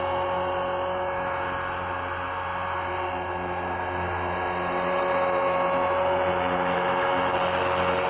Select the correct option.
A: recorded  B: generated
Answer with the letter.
A